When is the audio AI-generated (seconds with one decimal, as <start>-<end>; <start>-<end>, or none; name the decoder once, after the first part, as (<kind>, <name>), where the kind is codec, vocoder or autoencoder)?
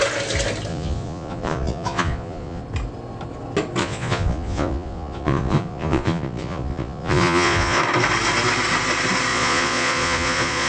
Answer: 0.7-2.6 (vocoder, Vocos); 3.8-7.8; 9.3-10.7